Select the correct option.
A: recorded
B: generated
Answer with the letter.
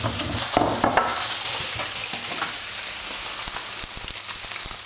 A